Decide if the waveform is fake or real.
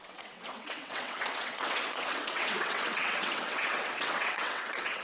fake